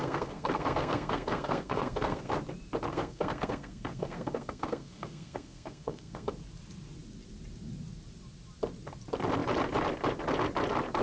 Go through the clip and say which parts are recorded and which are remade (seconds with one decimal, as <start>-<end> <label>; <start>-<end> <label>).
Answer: 0.0-2.3 remade; 2.3-2.9 recorded; 2.9-6.3 remade; 6.3-11.0 recorded